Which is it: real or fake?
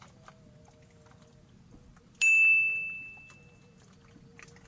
real